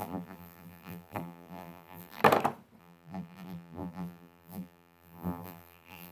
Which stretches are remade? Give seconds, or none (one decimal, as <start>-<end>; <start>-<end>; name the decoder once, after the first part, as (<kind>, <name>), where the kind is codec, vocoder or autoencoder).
0.0-2.2 (vocoder, BigVGAN v2); 2.8-6.1